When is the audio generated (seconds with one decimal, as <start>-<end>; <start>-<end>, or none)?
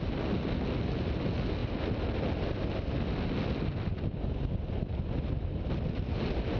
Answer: none